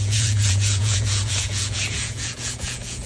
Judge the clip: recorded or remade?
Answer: remade